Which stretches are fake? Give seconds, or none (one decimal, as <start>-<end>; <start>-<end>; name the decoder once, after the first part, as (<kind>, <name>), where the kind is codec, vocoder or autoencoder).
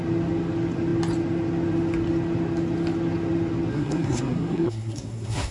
3.7-5.5 (codec, SNAC)